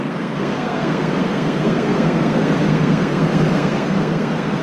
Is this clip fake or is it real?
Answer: fake